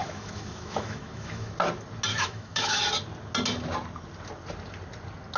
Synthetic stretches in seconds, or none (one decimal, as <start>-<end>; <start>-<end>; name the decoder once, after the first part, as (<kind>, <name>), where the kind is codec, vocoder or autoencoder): 0.0-1.5 (autoencoder, DAC-VAE); 2.1-2.8